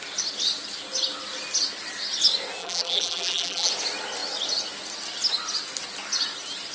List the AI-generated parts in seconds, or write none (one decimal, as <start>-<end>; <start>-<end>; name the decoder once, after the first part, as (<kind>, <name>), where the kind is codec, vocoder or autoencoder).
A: 2.6-3.7 (vocoder, BigVGAN v2)